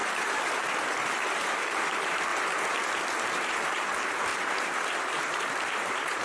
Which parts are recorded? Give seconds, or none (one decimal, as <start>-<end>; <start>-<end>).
2.3-3.4; 4.3-5.1

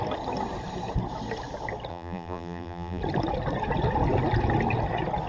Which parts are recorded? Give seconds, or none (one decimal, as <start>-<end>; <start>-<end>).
0.0-1.9; 3.0-5.3

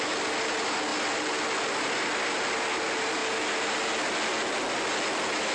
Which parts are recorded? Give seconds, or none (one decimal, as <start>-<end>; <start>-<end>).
0.0-5.5

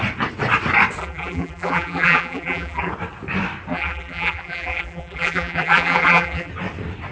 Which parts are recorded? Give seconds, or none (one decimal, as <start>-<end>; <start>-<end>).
0.0-1.0; 2.9-3.7; 6.5-7.1

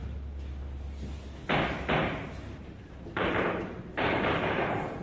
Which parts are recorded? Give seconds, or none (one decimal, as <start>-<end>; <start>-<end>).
0.0-2.0

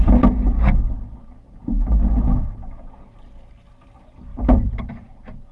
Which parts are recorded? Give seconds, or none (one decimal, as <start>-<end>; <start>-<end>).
0.0-4.3; 4.9-5.5

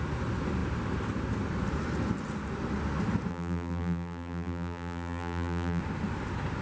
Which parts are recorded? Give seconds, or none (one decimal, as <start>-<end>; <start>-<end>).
0.0-3.3; 5.8-6.6